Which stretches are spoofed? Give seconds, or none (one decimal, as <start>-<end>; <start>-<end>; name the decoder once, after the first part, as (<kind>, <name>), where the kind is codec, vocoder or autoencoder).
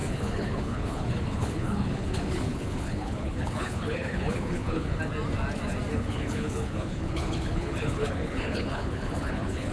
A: 0.0-5.0 (codec, HILCodec); 5.9-9.7